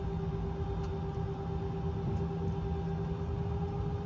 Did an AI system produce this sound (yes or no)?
no